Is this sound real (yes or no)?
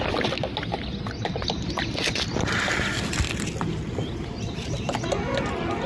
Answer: yes